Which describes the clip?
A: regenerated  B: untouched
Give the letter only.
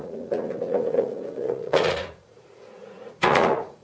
A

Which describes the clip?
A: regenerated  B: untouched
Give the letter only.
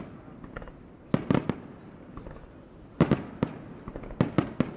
B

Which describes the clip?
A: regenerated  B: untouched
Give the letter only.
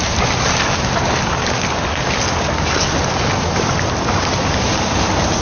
B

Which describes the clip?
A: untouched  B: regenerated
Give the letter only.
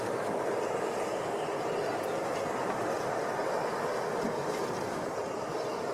A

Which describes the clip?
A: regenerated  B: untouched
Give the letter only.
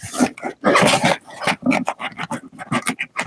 B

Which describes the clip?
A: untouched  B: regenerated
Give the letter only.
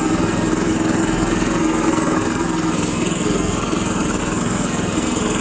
B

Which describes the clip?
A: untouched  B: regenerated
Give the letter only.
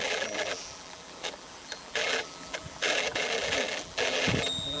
B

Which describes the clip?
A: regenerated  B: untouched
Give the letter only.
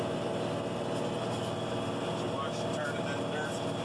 B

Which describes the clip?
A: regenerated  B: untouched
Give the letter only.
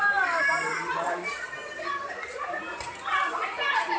A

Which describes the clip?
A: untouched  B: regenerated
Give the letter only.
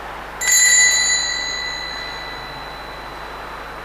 A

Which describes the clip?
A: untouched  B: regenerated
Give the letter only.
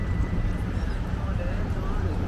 B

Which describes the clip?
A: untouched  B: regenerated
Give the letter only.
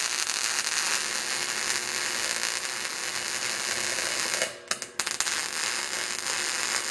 A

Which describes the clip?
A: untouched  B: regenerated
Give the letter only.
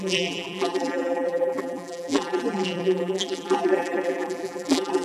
B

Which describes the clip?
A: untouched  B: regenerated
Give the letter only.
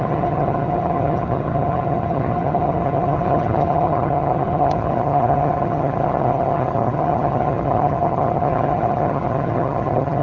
B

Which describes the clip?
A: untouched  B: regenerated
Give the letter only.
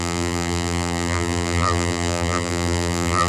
B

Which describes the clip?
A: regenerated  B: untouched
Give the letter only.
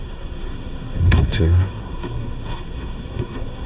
A